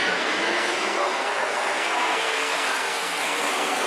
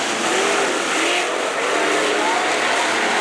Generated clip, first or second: first